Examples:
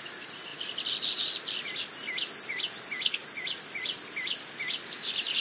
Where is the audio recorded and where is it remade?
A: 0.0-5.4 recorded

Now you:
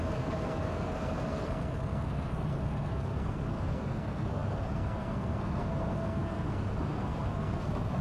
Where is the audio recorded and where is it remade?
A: 0.0-8.0 remade

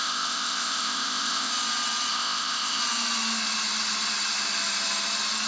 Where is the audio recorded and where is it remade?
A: 0.0-1.5 remade; 1.5-2.1 recorded; 2.1-2.8 remade; 2.8-5.5 recorded

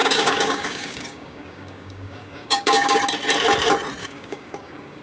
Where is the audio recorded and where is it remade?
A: 0.0-3.0 remade; 3.0-4.0 recorded; 4.0-5.0 remade

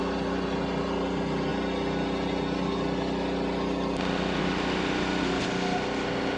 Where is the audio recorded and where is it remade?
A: 0.0-6.4 recorded

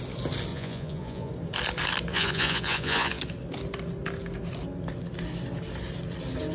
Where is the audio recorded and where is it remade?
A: 0.0-0.5 recorded; 0.5-1.3 remade; 1.3-2.1 recorded; 2.1-3.2 remade; 3.2-6.5 recorded